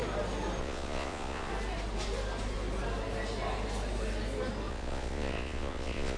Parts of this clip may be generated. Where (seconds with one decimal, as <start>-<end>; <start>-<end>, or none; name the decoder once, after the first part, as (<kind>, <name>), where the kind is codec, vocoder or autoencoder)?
0.6-1.5 (vocoder, Vocos); 4.7-6.2